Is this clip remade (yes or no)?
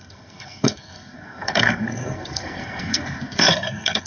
yes